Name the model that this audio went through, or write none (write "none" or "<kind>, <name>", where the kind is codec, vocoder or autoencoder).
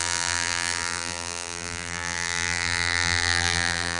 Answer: vocoder, BigVGAN v2